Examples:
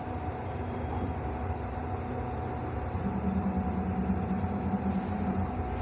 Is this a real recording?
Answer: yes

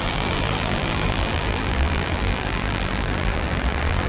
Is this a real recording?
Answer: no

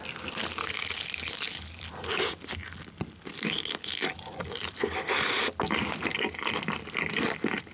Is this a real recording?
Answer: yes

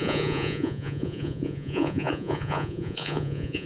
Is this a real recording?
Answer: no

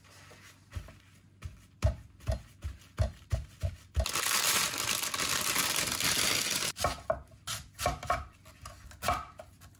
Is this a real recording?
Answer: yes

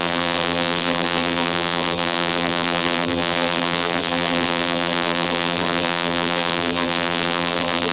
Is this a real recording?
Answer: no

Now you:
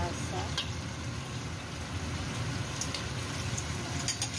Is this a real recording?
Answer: yes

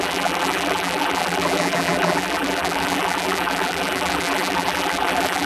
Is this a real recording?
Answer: no